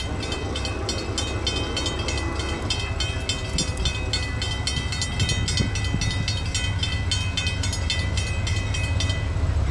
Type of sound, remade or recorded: recorded